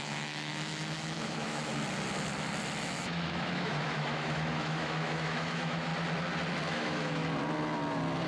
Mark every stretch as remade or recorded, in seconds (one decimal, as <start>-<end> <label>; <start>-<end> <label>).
0.0-1.7 remade; 1.7-2.8 recorded; 2.8-5.9 remade; 5.9-6.7 recorded; 6.7-7.2 remade; 7.2-8.3 recorded